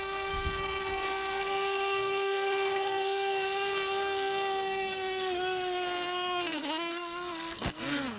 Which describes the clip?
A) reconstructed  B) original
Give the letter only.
A